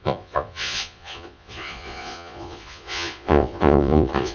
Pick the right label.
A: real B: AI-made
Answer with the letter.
B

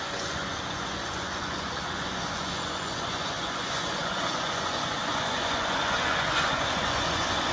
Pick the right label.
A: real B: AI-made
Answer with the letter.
B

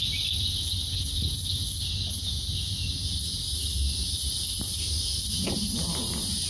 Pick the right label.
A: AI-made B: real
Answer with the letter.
B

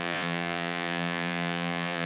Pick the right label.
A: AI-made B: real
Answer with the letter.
A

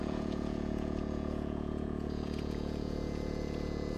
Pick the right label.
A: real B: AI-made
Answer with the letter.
B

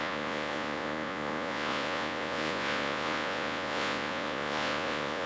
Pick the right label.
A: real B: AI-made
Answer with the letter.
B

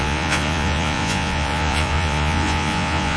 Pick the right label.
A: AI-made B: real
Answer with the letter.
A